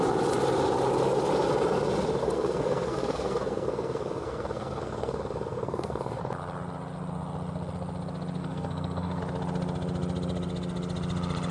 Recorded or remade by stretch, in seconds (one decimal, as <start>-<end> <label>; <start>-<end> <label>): 0.0-2.2 recorded; 2.2-6.2 remade; 6.2-8.4 recorded; 8.4-9.2 remade; 9.2-11.5 recorded